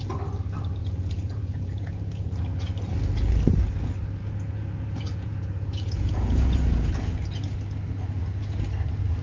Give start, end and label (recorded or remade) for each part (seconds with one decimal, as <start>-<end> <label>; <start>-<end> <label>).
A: 0.0-0.8 recorded; 0.8-2.4 remade; 2.4-4.2 recorded; 4.2-6.9 remade; 6.9-9.2 recorded